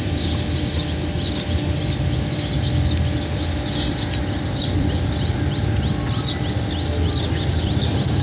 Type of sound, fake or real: real